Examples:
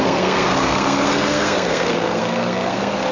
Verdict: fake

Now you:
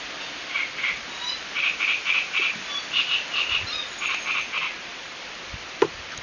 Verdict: fake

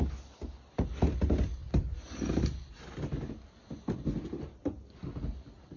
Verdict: real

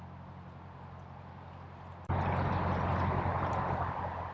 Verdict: real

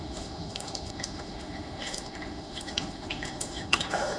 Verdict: fake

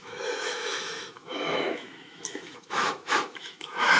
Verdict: fake